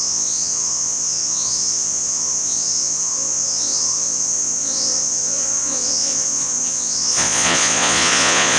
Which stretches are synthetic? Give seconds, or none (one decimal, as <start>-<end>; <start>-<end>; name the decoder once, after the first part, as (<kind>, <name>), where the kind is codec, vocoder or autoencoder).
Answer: 0.0-8.6 (vocoder, Vocos)